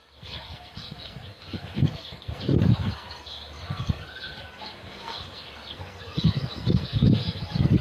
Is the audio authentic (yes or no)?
no